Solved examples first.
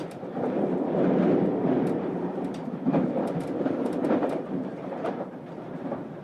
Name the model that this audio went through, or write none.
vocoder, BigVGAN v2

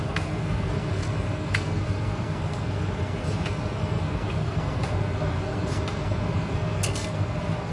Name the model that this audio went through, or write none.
codec, SNAC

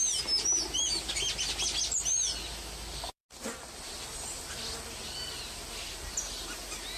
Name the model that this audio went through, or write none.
none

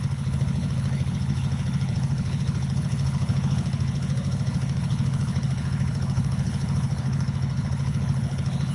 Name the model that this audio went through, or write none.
codec, HILCodec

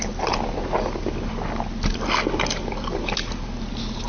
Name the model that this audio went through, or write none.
none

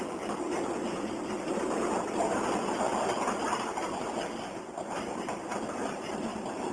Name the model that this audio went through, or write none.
none